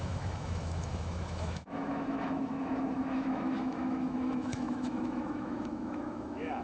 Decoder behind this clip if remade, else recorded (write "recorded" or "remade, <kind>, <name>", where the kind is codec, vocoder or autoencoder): remade, autoencoder, DAC-VAE